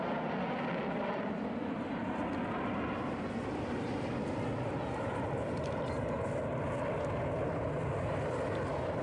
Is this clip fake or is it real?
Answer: real